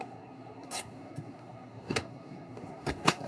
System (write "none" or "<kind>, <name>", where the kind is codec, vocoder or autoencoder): codec, SNAC